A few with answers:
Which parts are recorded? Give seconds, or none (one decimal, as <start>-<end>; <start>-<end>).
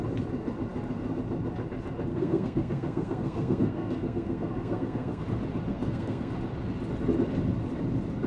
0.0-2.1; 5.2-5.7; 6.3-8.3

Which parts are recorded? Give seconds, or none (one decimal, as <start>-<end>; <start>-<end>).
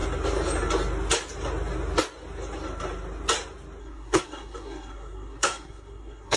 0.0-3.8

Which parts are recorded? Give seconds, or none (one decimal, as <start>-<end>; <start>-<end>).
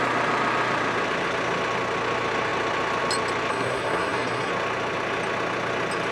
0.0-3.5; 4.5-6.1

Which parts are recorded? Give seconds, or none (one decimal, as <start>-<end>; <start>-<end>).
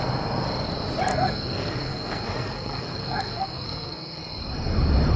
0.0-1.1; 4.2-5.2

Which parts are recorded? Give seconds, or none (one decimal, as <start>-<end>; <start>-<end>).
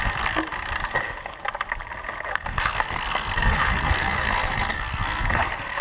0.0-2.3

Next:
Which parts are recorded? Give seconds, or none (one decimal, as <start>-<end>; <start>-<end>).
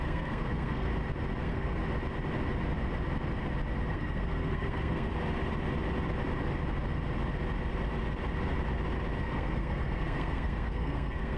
0.9-1.4; 1.8-3.9; 5.1-9.2